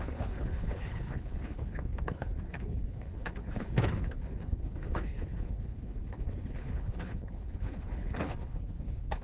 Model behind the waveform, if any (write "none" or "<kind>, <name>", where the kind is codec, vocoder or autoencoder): codec, HILCodec